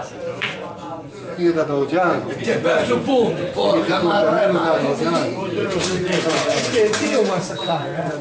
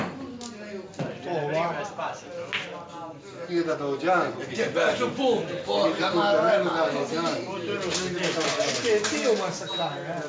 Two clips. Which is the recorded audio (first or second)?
second